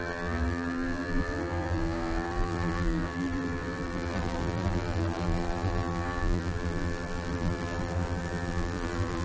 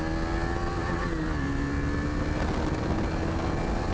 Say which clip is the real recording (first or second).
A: second